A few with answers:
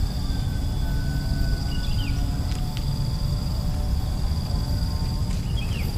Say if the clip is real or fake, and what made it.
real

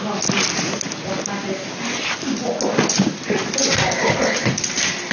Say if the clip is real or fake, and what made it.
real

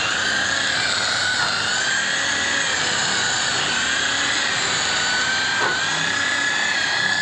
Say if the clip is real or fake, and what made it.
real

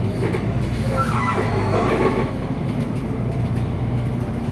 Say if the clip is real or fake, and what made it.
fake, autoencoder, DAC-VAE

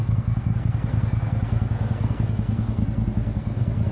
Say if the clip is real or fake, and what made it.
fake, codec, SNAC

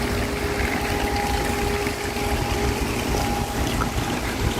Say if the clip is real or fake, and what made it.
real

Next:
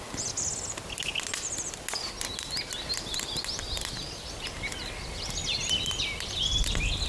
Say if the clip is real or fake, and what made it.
real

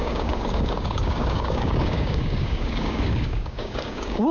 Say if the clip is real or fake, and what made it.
fake, codec, DAC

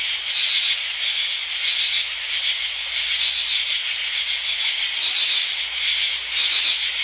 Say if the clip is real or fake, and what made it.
real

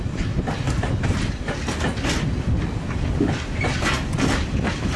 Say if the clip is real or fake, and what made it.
real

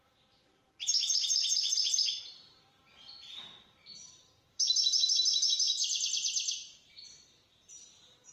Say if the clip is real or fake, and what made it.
fake, vocoder, BigVGAN v2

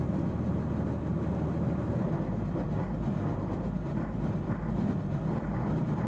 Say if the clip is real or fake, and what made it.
real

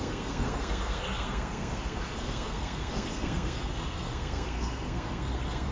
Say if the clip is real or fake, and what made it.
fake, codec, SNAC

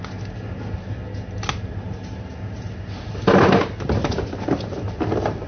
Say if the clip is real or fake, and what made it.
real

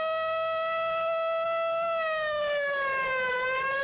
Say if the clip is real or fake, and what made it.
fake, autoencoder, DAC-VAE